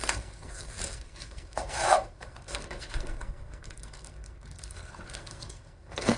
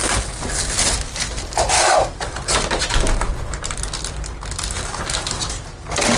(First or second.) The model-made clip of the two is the first